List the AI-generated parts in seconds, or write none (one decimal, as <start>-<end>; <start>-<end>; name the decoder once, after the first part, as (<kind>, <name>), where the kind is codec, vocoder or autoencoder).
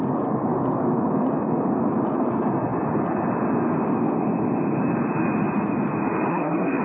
6.3-6.8 (codec, SNAC)